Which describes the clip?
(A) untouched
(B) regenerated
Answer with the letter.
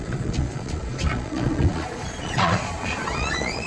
B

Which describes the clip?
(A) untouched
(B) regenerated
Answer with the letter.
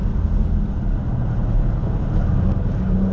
A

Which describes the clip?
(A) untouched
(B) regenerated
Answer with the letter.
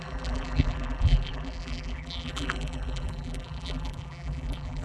B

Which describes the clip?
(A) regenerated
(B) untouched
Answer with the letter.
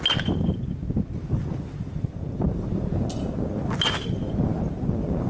B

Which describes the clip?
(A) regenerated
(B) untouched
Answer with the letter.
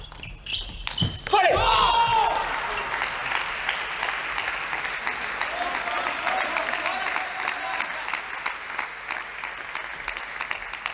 B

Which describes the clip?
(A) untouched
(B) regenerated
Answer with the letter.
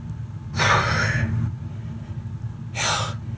A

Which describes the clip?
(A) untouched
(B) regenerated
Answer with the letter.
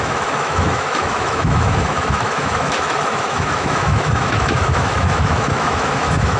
B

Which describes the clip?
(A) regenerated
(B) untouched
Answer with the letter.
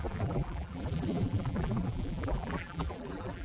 A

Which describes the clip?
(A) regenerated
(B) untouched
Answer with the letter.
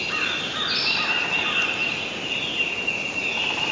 B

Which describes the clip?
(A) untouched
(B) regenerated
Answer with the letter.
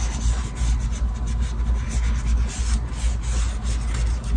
A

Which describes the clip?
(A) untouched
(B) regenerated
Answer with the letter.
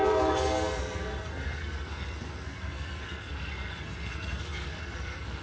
B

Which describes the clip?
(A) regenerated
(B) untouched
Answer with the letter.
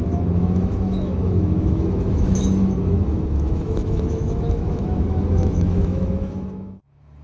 A